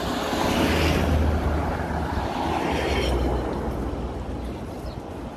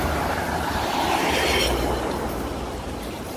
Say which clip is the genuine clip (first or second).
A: first